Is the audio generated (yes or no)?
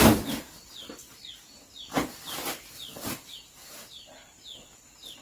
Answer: no